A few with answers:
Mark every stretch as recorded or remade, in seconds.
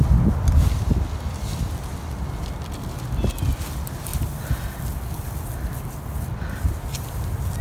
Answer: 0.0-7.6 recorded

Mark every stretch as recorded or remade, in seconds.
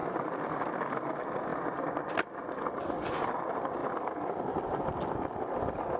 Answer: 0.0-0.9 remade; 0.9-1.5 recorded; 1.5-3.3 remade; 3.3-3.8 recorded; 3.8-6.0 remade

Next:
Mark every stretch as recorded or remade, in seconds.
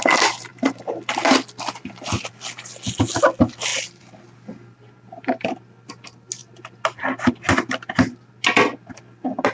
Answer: 0.0-0.5 recorded; 0.5-1.1 remade; 1.1-3.7 recorded; 3.7-4.2 remade; 4.2-9.5 recorded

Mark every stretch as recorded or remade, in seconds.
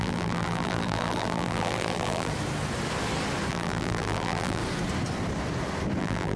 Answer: 0.0-2.3 remade; 2.3-3.5 recorded; 3.5-4.6 remade; 4.6-6.0 recorded; 6.0-6.4 remade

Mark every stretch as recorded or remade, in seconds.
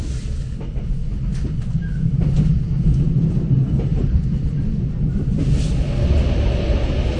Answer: 0.0-3.9 recorded; 3.9-4.9 remade; 4.9-7.2 recorded